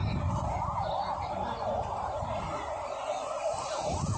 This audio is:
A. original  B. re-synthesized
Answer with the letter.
A